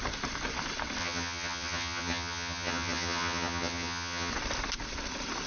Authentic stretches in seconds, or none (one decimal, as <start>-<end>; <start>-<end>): 0.0-1.0; 4.3-5.5